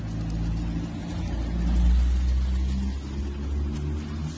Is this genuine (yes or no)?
yes